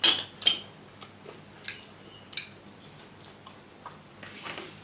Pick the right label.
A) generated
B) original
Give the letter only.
B